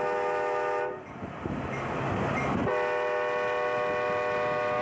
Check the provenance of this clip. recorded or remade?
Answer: recorded